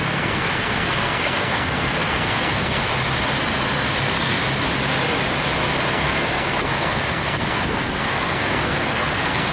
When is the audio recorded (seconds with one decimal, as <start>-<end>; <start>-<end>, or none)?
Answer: 2.9-4.0; 4.4-5.9